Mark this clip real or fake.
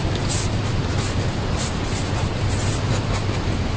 real